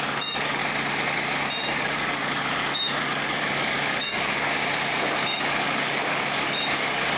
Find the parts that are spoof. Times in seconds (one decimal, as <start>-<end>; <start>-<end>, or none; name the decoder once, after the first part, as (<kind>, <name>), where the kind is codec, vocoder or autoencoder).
0.0-0.6 (codec, DAC); 1.7-4.5; 5.2-7.2